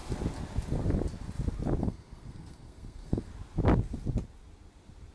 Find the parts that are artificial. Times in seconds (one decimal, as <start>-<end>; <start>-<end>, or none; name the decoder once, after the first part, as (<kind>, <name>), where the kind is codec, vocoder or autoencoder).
1.8-3.3 (codec, SNAC)